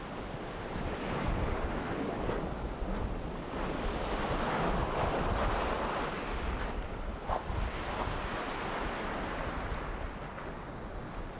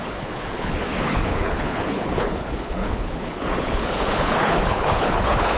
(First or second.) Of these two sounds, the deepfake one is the second